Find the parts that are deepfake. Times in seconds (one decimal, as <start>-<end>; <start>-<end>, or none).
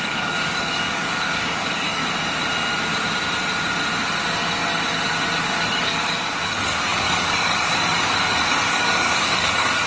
0.0-2.0; 5.4-9.9